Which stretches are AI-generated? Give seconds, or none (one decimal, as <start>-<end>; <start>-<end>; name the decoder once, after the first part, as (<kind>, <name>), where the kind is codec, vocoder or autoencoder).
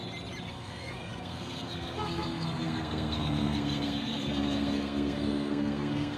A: 0.5-6.2 (codec, SNAC)